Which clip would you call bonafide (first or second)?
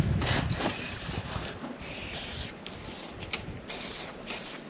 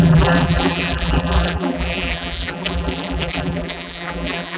first